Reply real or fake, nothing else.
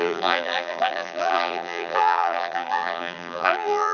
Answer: fake